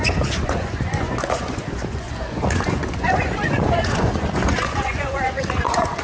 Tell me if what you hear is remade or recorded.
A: remade